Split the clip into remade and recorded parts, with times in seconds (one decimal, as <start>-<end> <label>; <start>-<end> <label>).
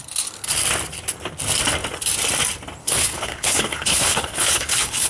0.0-2.8 recorded; 2.8-5.1 remade